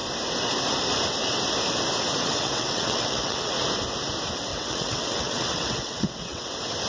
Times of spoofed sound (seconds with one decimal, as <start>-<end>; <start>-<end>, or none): 2.2-3.5; 4.5-6.5